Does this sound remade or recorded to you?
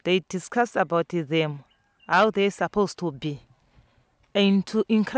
recorded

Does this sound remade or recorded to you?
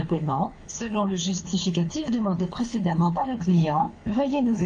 remade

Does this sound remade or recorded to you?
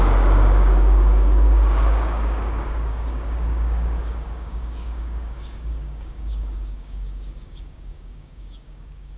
remade